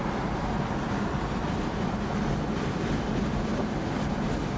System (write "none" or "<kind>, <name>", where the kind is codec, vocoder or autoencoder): none